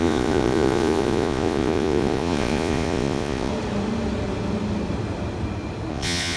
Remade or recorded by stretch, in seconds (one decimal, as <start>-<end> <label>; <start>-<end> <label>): 0.0-3.5 remade; 3.5-5.9 recorded; 5.9-6.4 remade